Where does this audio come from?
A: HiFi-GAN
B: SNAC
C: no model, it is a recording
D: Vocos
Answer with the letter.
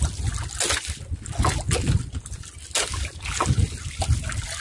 C